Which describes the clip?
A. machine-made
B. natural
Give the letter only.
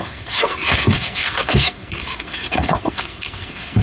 A